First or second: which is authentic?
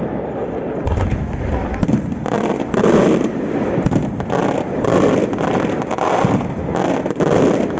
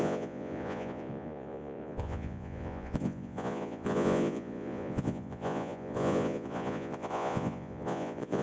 first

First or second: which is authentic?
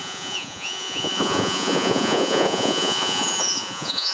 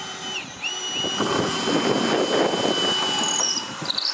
second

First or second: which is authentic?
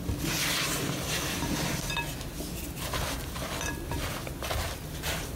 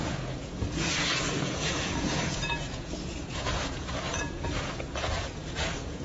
first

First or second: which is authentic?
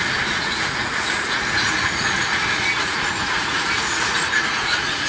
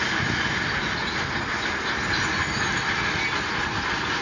second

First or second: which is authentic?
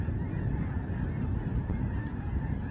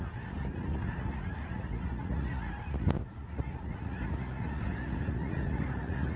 first